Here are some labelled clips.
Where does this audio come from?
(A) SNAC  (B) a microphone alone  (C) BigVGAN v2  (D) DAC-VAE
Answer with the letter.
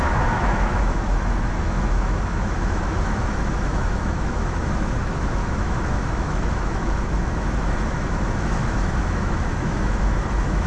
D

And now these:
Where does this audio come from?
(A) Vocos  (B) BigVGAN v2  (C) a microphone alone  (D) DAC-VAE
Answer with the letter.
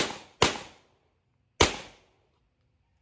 C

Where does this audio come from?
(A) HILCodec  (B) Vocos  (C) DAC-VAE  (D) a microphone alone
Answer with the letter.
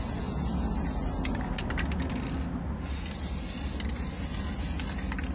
D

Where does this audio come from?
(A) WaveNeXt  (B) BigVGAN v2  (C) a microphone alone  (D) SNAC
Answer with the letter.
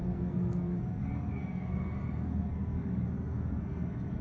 D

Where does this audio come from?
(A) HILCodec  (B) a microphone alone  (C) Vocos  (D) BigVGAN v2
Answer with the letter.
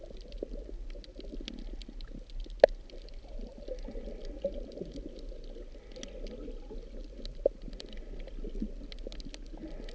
B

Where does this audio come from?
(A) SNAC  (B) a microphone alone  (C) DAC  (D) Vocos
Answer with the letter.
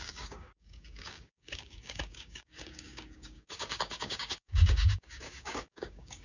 C